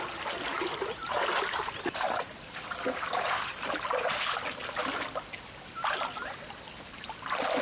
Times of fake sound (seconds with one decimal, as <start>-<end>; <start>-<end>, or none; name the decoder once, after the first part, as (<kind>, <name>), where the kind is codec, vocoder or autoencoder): none

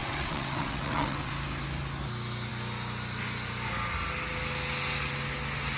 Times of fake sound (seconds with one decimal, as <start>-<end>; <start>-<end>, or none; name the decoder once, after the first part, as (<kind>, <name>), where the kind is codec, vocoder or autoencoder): 0.0-1.3 (vocoder, WaveNeXt)

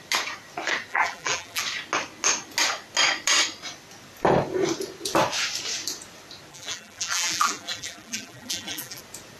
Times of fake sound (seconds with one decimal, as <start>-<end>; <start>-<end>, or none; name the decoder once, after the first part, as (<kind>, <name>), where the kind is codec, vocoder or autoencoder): 0.9-1.6 (vocoder, BigVGAN v2); 6.5-9.0